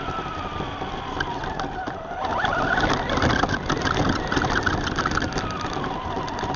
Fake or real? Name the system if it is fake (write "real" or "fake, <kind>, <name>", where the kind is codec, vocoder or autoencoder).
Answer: real